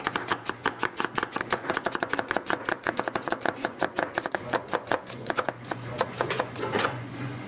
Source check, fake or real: fake